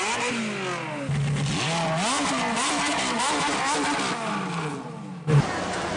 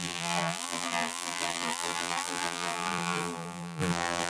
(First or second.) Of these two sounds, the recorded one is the first